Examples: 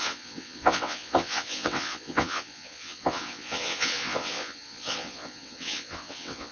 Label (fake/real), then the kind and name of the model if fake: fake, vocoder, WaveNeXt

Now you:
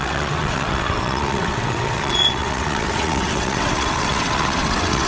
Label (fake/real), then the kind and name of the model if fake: fake, vocoder, WaveNeXt